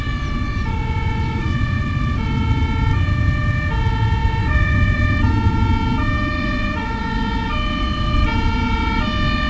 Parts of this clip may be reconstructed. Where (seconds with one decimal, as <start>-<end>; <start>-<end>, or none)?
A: 0.5-1.8; 4.2-5.1; 6.4-7.2